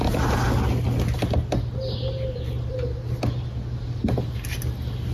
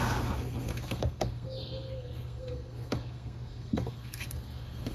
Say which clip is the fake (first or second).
second